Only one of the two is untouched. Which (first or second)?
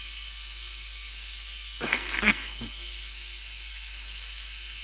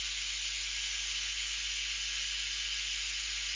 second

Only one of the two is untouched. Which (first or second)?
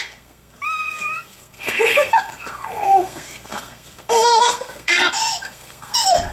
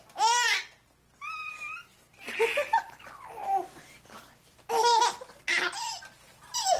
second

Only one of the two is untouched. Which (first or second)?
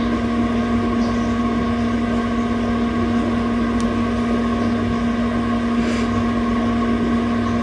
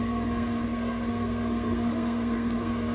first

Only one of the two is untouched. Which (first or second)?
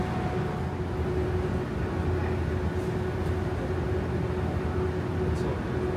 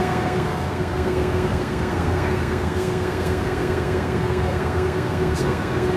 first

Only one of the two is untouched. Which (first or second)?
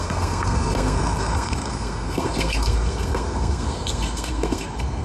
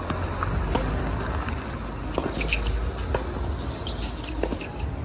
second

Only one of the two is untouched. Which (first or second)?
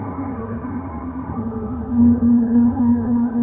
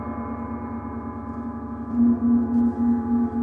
second